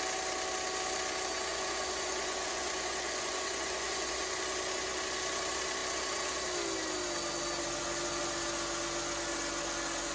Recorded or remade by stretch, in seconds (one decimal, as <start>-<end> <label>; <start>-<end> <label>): 0.0-1.5 recorded; 1.5-4.2 remade; 4.2-10.1 recorded